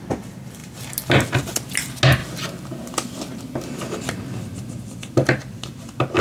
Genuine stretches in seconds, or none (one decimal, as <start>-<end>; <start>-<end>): 0.0-6.2